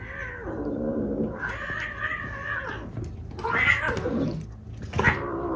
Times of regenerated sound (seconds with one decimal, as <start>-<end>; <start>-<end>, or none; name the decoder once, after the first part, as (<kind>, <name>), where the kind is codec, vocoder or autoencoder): none